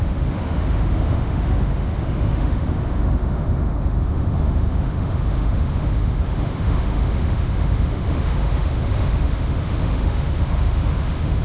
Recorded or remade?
remade